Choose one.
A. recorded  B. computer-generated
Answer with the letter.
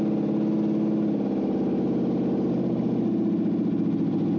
A